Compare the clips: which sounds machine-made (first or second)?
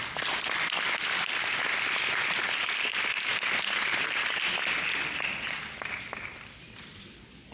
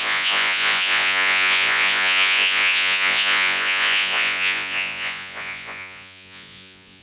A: second